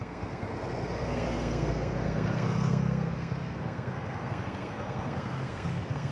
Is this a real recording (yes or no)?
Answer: no